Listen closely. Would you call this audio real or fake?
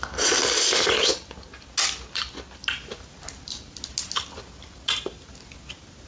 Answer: real